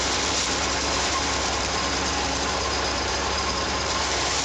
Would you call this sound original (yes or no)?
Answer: no